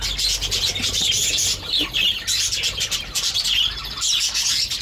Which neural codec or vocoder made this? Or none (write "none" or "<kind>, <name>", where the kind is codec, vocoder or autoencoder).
none